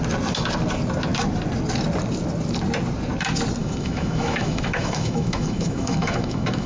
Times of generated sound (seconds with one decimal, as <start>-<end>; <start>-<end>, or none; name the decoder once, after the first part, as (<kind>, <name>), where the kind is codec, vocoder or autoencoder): 3.6-6.7 (autoencoder, DAC-VAE)